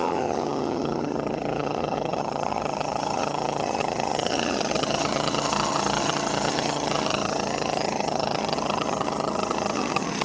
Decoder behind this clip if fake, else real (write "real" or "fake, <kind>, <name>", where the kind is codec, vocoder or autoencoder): fake, vocoder, HiFi-GAN